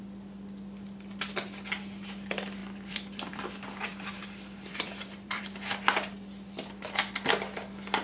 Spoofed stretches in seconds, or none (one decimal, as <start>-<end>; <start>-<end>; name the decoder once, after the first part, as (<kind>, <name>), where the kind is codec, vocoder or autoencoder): 2.6-5.4 (vocoder, BigVGAN v2)

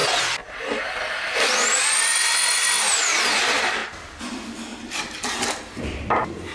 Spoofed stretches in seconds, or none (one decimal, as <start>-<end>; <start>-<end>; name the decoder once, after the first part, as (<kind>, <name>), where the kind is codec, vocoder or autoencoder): 0.0-3.8 (vocoder, BigVGAN v2); 4.3-6.5

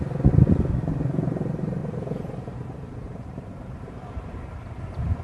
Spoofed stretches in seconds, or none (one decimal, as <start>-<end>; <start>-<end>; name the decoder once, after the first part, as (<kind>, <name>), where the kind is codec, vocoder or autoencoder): 1.8-4.3 (vocoder, BigVGAN v2)